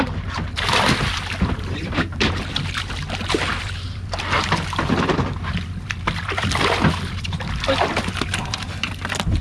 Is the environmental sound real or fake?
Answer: fake